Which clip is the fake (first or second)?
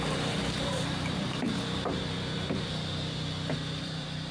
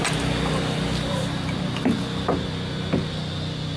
first